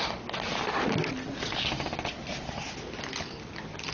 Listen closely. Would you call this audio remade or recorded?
recorded